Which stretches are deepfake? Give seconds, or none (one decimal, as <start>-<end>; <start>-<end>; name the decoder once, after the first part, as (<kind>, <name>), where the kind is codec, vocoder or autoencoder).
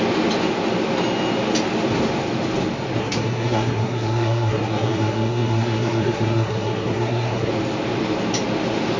3.0-7.5 (codec, SNAC)